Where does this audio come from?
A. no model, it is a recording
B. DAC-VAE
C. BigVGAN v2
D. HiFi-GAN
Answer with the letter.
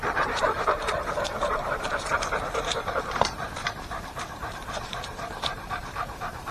C